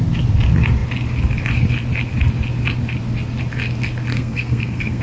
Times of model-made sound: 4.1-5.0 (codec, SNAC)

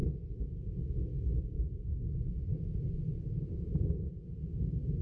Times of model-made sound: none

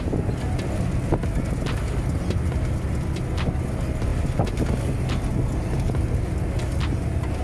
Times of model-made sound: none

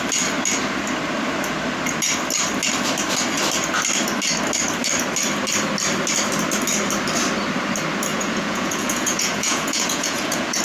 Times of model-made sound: 8.1-10.6 (vocoder, Vocos)

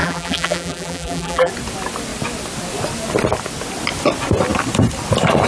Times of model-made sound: 0.0-1.5 (vocoder, BigVGAN v2)

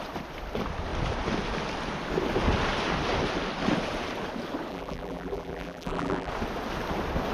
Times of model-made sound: 4.7-6.3 (vocoder, BigVGAN v2)

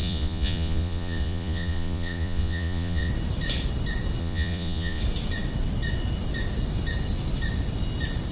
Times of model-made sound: 0.0-3.1 (vocoder, Vocos); 4.2-5.0

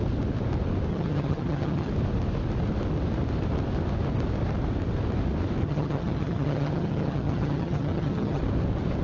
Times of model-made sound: 0.9-1.9 (vocoder, HiFi-GAN); 5.6-8.4